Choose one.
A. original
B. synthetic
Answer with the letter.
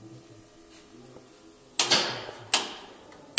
A